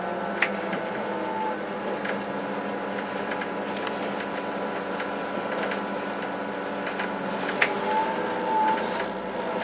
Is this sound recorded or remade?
recorded